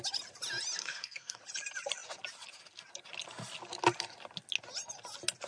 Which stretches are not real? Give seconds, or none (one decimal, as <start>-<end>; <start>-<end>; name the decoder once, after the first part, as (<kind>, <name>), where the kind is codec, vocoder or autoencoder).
0.8-1.4 (codec, SNAC)

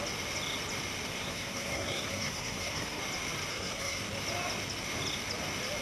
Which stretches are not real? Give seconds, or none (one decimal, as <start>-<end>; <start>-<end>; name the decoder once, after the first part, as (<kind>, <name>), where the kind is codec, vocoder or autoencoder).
1.1-3.0 (codec, SNAC); 3.5-4.0

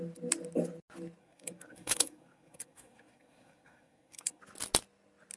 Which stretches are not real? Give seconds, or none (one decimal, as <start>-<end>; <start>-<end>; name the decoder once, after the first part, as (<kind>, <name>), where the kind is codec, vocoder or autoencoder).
1.2-4.4 (codec, SNAC)

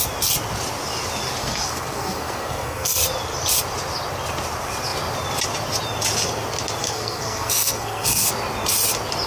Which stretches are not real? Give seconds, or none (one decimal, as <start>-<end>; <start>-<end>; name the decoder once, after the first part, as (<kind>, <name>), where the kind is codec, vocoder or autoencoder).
1.4-3.0 (codec, SNAC); 6.8-8.3

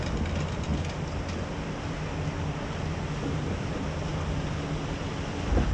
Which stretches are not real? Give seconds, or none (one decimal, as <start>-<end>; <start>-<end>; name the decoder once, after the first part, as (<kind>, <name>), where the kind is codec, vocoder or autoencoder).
none

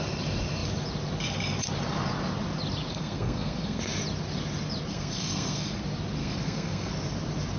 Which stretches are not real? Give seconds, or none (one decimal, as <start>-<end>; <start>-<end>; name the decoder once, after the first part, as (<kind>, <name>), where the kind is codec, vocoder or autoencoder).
2.9-3.8 (codec, SNAC); 4.9-5.8; 6.2-6.9